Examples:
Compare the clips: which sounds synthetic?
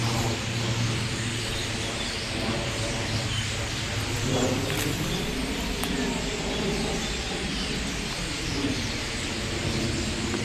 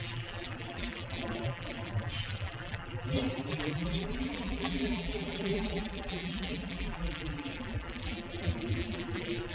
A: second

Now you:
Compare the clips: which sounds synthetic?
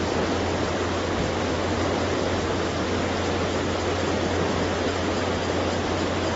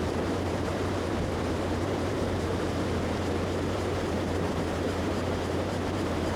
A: second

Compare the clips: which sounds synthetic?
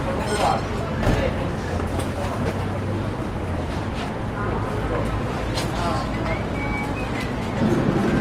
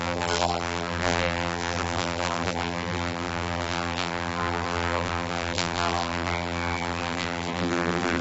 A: second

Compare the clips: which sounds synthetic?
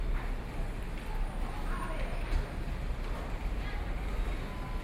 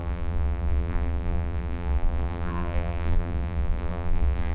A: second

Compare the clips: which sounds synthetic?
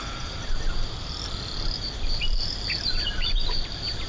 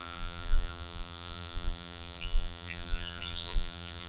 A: second